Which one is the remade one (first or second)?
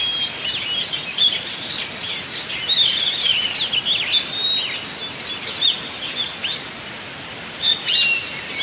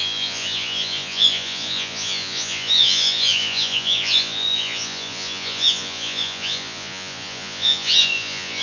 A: second